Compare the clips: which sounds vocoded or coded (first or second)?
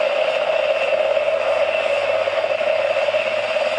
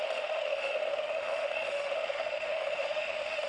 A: second